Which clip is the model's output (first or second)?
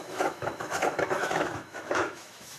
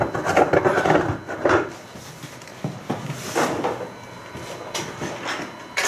first